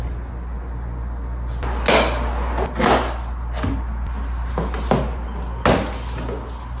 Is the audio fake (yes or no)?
no